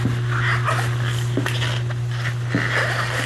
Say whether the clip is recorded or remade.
recorded